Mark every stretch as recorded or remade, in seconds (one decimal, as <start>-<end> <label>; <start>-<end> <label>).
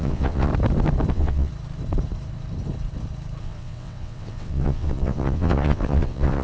0.0-0.5 remade; 0.5-1.1 recorded; 1.1-1.5 remade; 1.5-3.4 recorded; 3.4-6.4 remade